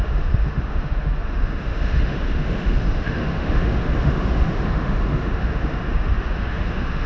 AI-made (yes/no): yes